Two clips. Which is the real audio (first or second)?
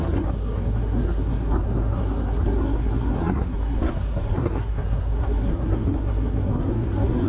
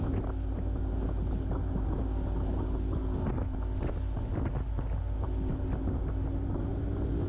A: second